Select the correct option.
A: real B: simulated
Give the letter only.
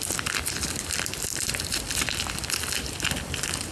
B